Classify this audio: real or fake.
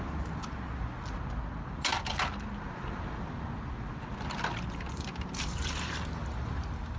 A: real